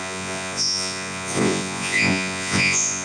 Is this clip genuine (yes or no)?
no